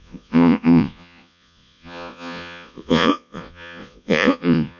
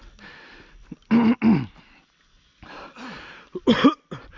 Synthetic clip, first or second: first